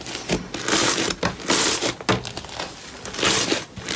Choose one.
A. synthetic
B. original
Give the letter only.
B